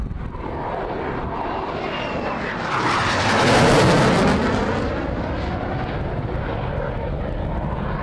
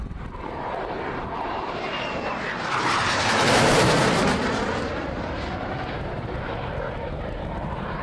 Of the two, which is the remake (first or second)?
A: second